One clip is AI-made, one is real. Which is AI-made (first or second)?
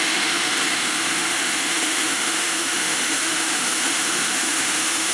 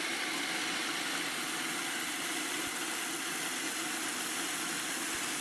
first